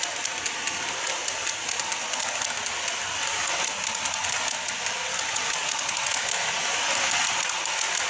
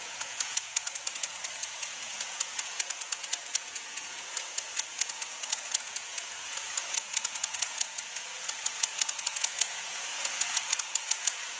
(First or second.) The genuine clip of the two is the first